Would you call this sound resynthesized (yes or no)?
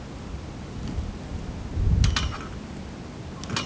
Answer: no